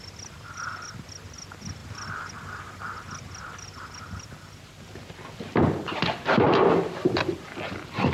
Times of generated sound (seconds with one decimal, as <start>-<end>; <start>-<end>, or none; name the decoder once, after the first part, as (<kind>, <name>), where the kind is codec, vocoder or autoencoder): 1.8-2.3 (vocoder, BigVGAN v2)